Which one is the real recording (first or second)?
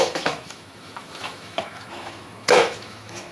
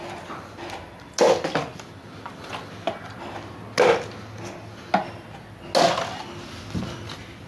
second